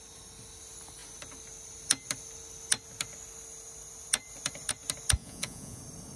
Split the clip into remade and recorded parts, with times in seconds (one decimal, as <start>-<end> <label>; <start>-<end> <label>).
0.0-5.2 recorded; 5.2-5.8 remade; 5.8-6.2 recorded